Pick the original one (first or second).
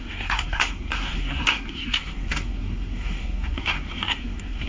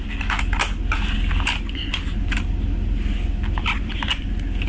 second